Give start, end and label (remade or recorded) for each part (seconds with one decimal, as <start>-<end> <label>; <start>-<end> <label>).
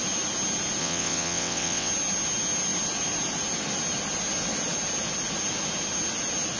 0.0-0.8 recorded; 0.8-1.9 remade; 1.9-6.6 recorded